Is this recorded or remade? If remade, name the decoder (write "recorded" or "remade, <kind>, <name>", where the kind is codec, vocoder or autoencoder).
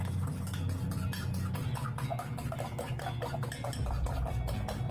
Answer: recorded